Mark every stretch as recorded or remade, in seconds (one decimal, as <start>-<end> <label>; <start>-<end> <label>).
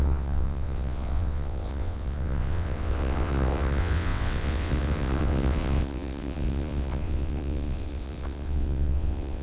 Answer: 0.0-9.4 remade